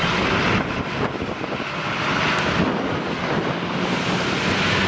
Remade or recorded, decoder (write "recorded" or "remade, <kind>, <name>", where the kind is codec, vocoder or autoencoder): recorded